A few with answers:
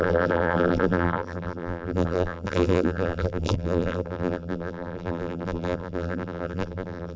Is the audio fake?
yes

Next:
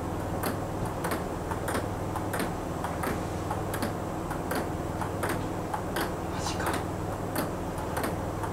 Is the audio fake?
no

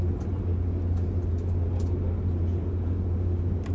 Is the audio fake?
no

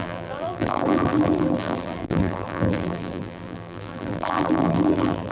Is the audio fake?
yes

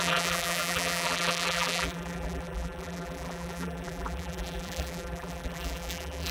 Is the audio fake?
yes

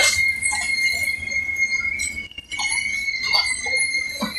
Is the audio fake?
no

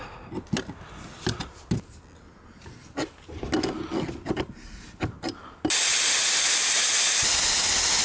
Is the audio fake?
no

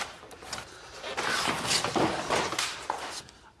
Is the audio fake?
no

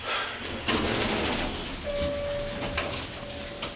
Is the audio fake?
no